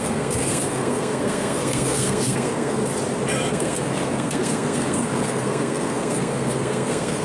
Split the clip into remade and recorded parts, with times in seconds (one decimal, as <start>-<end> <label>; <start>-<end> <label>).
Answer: 0.0-2.9 remade; 2.9-3.5 recorded; 3.5-7.2 remade